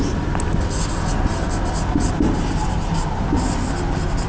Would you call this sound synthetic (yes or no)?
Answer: no